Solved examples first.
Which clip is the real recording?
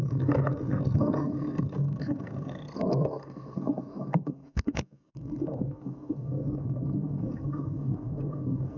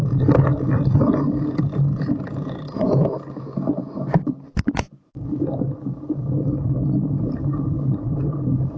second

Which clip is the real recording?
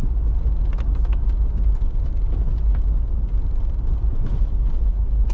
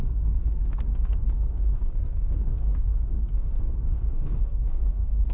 first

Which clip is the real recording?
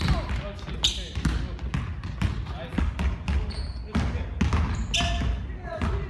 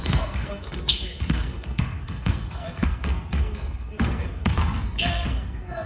first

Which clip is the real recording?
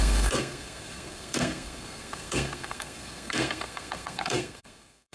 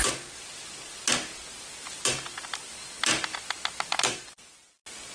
second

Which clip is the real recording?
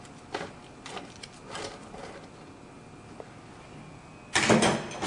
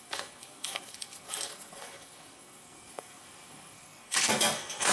first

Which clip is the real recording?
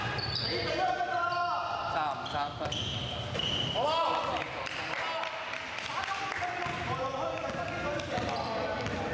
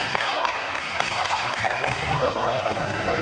first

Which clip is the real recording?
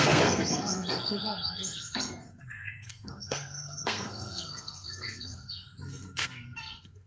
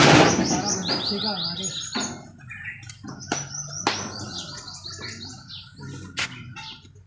second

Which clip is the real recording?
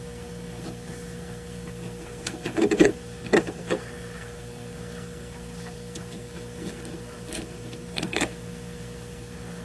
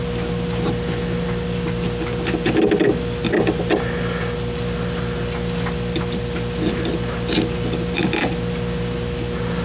second